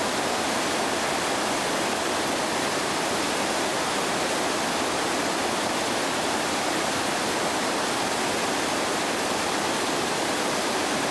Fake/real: real